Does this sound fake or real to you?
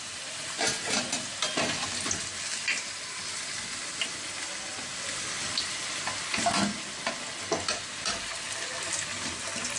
real